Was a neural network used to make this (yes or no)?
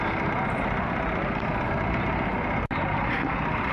no